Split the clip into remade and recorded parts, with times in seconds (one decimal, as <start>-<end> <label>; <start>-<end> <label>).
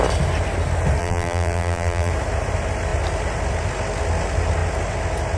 0.0-1.0 recorded; 1.0-2.1 remade; 2.1-5.4 recorded